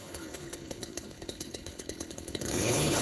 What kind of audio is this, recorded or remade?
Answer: remade